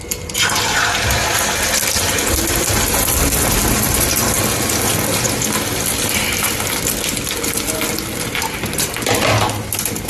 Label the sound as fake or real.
real